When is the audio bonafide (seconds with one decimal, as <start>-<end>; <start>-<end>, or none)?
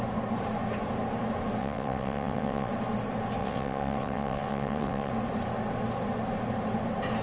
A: 0.0-1.6; 2.7-3.4; 5.1-7.2